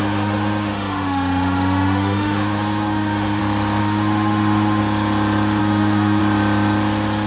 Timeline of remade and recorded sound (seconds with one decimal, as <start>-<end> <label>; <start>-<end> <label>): 0.0-3.4 remade; 3.4-3.8 recorded; 3.8-4.8 remade; 4.8-5.6 recorded; 5.6-6.2 remade; 6.2-7.3 recorded

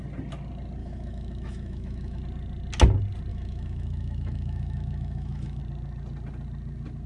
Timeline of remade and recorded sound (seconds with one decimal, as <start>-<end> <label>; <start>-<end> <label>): 0.0-0.8 recorded; 0.8-2.2 remade; 2.2-3.3 recorded; 3.3-5.6 remade; 5.6-7.1 recorded

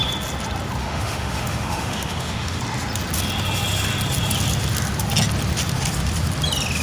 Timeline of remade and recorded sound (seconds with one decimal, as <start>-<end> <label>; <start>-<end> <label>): 0.0-0.8 recorded; 0.8-2.6 remade; 2.6-6.8 recorded

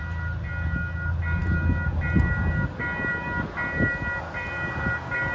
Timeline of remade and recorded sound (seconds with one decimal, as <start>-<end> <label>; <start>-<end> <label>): 0.0-5.3 recorded

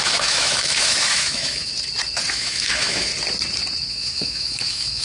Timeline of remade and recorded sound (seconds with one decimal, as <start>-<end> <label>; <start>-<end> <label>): 0.0-1.7 remade; 1.7-2.3 recorded; 2.3-3.1 remade; 3.1-3.9 recorded; 3.9-5.0 remade

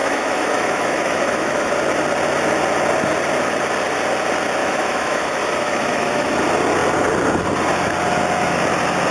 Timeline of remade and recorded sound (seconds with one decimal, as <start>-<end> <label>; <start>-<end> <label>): 0.0-1.7 remade; 1.7-4.6 recorded; 4.6-6.3 remade; 6.3-9.1 recorded

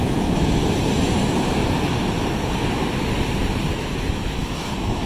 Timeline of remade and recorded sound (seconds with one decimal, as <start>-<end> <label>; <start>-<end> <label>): 0.0-0.6 remade; 0.6-3.7 recorded; 3.7-5.1 remade

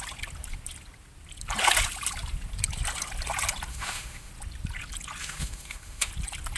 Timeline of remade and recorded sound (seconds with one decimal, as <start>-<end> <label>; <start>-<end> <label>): 0.0-3.7 recorded; 3.7-4.3 remade; 4.3-5.2 recorded; 5.2-6.1 remade; 6.1-6.6 recorded